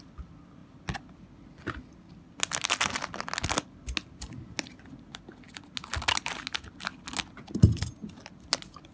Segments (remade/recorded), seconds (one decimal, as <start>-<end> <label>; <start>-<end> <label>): 0.0-8.9 recorded